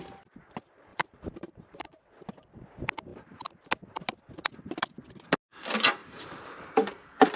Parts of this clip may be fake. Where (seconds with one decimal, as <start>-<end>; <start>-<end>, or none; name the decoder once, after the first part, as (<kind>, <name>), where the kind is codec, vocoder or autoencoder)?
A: 0.9-1.8 (vocoder, BigVGAN v2); 6.0-7.4